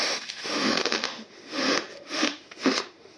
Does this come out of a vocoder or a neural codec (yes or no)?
yes